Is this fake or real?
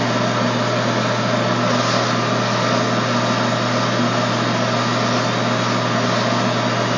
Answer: real